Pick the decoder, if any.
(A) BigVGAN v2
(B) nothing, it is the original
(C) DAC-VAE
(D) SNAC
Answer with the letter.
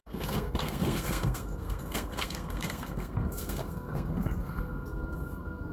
D